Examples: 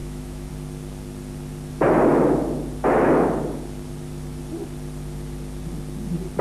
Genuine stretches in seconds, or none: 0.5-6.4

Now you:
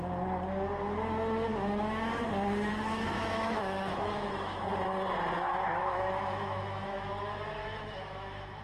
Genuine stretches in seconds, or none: 0.0-1.5; 2.2-2.7; 4.6-5.8; 7.1-7.6

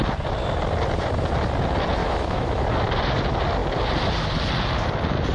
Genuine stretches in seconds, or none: 0.0-2.0; 2.5-5.3

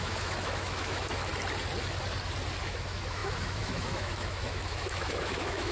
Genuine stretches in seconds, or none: 1.3-2.6

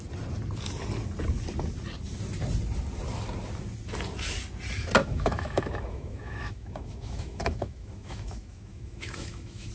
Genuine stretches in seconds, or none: 0.0-5.0